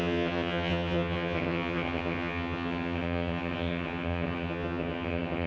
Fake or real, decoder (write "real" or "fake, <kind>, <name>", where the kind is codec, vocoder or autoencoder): fake, vocoder, HiFi-GAN